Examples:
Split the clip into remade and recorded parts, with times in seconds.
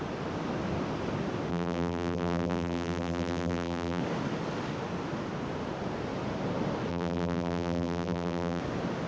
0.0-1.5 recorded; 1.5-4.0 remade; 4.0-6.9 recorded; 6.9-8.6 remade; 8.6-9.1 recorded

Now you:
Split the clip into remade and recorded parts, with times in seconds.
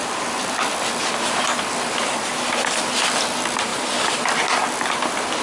0.0-5.4 recorded